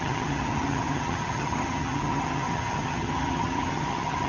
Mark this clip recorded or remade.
remade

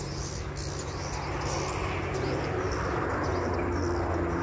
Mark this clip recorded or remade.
recorded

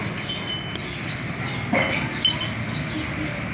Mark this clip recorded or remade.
recorded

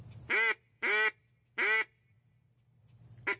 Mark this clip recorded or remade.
recorded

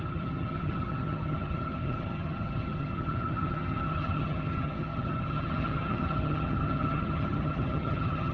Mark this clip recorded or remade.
remade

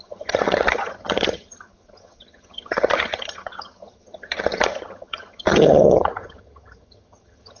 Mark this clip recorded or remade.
remade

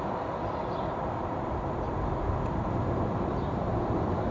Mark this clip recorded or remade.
recorded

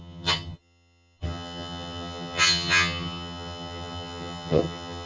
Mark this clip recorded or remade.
remade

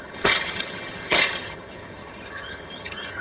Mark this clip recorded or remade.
remade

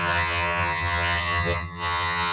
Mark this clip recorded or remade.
remade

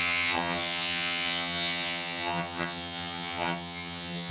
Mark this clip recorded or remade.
remade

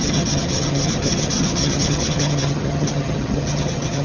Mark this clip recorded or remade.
remade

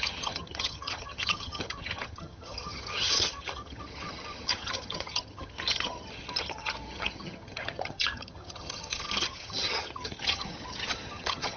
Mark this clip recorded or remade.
remade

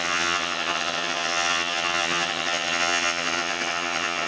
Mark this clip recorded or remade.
remade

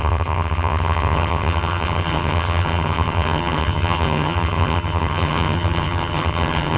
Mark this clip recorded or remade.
remade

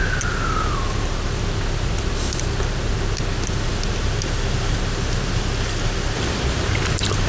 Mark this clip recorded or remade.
recorded